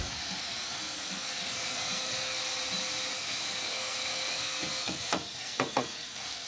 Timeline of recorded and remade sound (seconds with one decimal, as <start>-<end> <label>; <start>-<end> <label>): 0.0-2.4 remade; 2.4-3.1 recorded; 3.1-6.5 remade